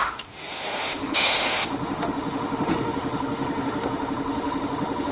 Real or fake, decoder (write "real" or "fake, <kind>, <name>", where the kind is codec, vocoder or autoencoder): fake, autoencoder, DAC-VAE